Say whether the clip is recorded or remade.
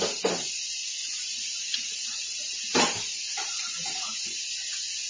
remade